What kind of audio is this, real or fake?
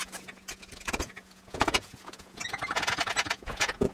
fake